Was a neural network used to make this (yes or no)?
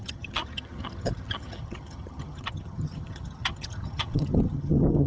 yes